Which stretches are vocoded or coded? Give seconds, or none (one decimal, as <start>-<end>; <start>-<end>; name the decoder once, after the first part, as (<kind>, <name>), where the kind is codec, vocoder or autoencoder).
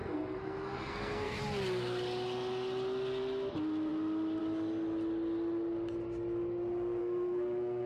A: 0.0-1.4 (codec, SNAC); 7.0-7.9